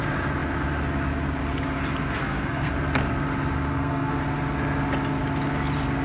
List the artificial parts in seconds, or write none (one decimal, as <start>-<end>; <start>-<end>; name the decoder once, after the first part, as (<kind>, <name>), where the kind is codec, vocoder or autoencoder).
2.2-2.7 (codec, SNAC); 3.7-4.2